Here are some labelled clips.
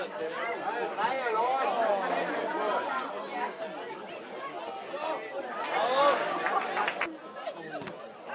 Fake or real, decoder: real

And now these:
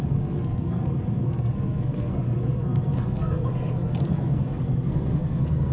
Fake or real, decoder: fake, codec, SNAC